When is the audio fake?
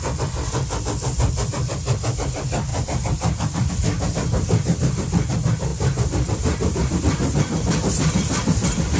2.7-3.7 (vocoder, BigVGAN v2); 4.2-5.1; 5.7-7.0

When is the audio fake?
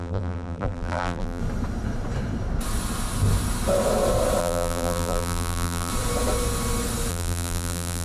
0.0-1.4 (vocoder, BigVGAN v2); 4.4-5.9; 7.1-8.0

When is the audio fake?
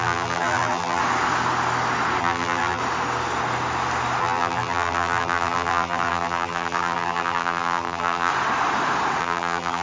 0.0-1.0 (vocoder, BigVGAN v2); 2.2-2.8; 4.2-8.3; 9.2-9.8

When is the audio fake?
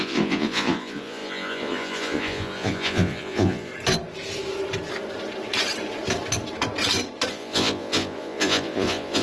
0.0-3.7 (vocoder, Vocos); 7.3-9.2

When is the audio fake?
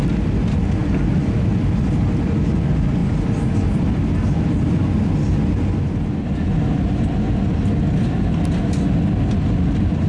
none